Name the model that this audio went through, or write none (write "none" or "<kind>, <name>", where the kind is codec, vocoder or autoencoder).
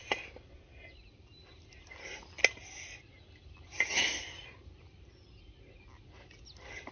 none